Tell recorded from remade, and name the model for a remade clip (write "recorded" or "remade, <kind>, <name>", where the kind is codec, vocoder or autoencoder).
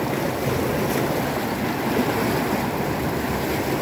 recorded